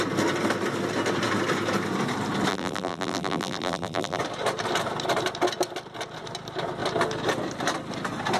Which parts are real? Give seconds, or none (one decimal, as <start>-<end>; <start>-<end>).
0.0-2.5; 4.2-8.4